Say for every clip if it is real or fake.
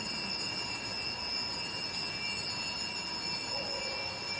real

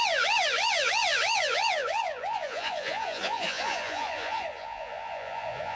fake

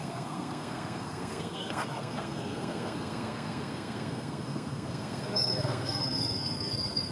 fake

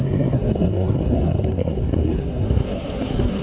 fake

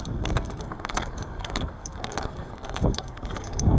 fake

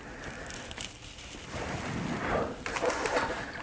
fake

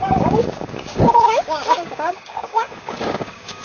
fake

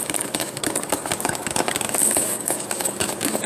fake